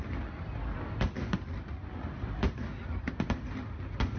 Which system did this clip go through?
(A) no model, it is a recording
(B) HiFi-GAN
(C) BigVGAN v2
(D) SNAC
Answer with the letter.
A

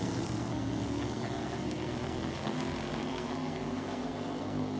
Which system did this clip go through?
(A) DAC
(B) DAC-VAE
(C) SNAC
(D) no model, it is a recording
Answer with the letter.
C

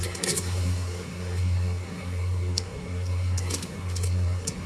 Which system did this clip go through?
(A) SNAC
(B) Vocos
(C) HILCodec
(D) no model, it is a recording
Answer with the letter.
A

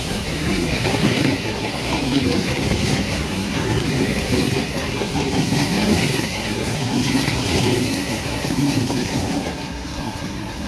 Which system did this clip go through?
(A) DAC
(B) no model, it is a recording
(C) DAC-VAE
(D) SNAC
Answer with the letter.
D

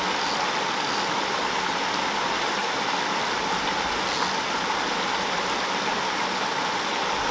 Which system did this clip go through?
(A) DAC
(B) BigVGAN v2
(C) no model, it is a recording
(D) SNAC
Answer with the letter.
C